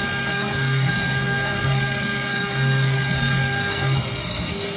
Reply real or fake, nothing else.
fake